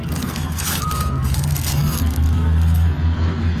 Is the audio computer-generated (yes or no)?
yes